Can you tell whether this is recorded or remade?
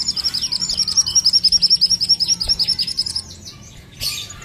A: recorded